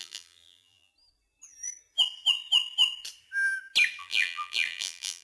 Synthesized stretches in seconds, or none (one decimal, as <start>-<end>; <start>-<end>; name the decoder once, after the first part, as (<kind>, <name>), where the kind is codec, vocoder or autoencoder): 0.0-0.9 (vocoder, BigVGAN v2); 4.0-5.2